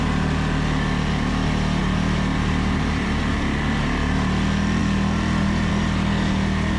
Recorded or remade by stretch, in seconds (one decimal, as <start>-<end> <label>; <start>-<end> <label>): 0.0-1.8 recorded; 1.8-3.2 remade; 3.2-6.8 recorded